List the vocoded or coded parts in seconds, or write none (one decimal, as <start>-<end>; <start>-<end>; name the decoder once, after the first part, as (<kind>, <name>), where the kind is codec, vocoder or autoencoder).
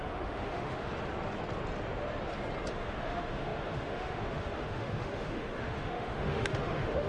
0.0-0.9 (autoencoder, DAC-VAE); 2.7-7.1